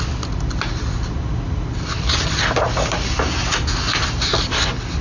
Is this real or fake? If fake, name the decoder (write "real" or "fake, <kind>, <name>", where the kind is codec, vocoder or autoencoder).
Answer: real